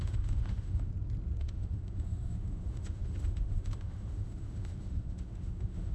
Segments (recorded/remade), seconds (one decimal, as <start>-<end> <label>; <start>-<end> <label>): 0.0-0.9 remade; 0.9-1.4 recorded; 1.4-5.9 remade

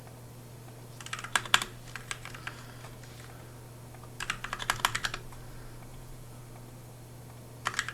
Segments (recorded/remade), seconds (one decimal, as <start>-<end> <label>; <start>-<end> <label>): 0.0-5.9 recorded; 5.9-6.4 remade; 6.4-7.9 recorded

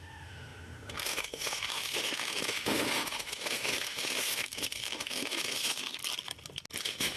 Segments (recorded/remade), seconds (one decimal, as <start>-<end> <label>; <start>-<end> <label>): 0.0-6.0 remade; 6.0-6.8 recorded; 6.8-7.2 remade